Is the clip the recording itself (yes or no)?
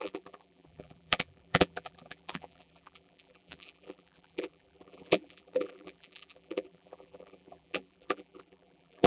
no